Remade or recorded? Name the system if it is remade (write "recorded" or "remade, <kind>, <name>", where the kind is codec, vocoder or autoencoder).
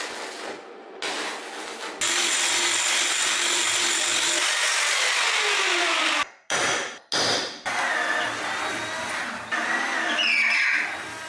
recorded